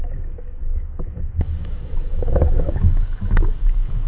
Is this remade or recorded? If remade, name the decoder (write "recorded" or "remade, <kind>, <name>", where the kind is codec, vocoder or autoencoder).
remade, codec, DAC